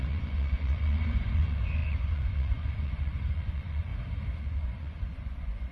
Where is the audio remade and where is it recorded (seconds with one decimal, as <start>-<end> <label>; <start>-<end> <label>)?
0.0-3.9 remade; 3.9-4.4 recorded; 4.4-5.7 remade